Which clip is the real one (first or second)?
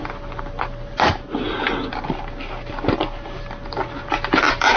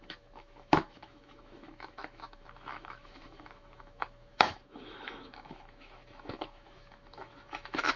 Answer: first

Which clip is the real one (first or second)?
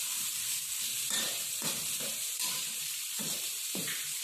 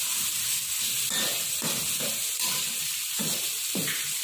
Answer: second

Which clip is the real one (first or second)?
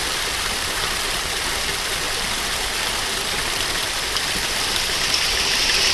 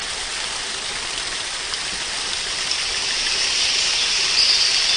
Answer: first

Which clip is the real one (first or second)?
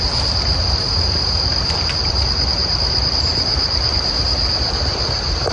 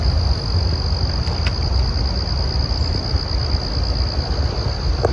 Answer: second